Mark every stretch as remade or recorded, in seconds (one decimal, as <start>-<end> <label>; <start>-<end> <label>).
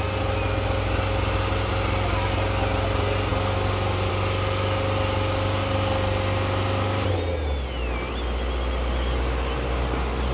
0.0-10.3 recorded